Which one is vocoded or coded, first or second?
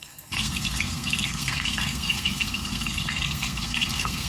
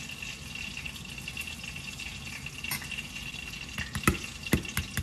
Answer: first